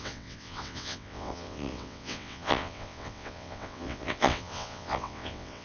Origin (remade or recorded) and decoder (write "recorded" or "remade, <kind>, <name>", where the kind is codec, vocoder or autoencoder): remade, vocoder, WaveNeXt